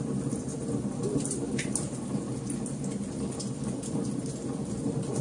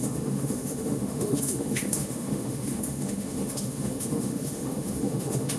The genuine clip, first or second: first